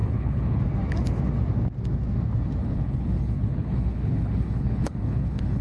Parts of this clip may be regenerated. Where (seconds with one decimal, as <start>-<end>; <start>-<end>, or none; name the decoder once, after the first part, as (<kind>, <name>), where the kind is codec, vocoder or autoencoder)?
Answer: 0.0-0.6 (codec, HILCodec); 2.6-5.6